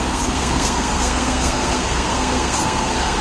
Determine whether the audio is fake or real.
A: fake